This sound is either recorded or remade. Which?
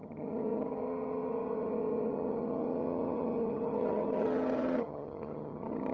remade